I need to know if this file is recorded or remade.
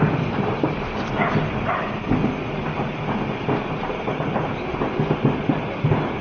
recorded